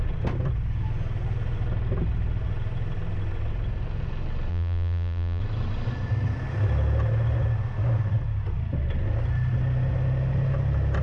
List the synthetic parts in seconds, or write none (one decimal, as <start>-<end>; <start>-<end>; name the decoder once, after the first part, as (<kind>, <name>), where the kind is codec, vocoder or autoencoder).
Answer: 4.5-5.4 (vocoder, BigVGAN v2)